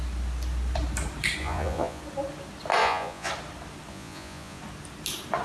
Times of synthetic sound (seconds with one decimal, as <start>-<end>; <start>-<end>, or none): 1.4-2.0; 2.8-3.3; 3.9-4.6